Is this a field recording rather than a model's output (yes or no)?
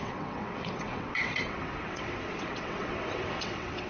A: no